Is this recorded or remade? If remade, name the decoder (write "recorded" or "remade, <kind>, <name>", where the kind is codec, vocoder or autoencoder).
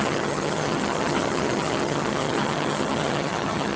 remade, vocoder, HiFi-GAN